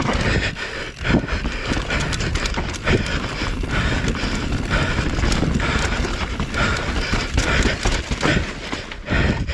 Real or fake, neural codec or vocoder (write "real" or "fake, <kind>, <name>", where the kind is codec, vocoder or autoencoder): real